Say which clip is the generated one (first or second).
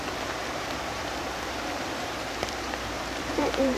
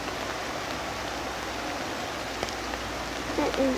first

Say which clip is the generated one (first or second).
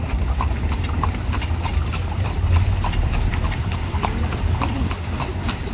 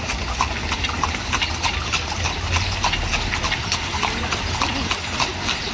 first